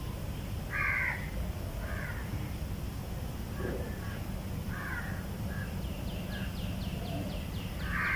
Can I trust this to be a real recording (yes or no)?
yes